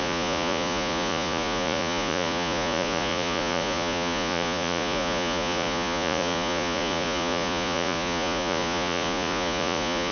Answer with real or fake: fake